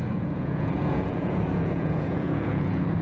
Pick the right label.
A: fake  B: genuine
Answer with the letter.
A